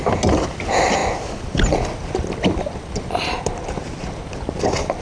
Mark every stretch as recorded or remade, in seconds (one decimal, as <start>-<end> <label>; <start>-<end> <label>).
0.0-5.0 recorded